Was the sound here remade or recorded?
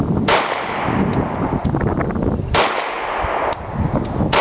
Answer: recorded